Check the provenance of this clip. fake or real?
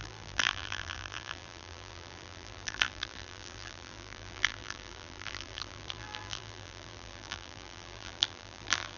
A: fake